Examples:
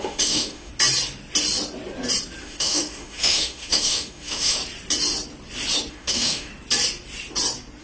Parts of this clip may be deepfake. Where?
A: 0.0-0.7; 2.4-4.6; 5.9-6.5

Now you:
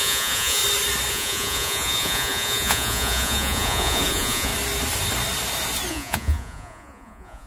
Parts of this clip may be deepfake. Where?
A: 0.0-0.6; 1.1-4.5; 5.9-7.5

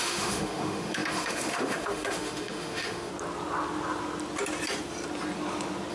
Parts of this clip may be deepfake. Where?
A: 0.0-3.1

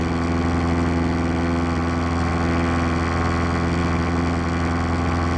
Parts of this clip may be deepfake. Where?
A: none

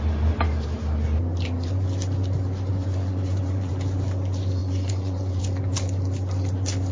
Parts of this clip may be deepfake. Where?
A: 2.7-3.7; 4.6-5.4